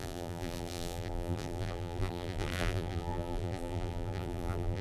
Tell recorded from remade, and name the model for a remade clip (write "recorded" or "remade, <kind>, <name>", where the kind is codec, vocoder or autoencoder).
remade, vocoder, BigVGAN v2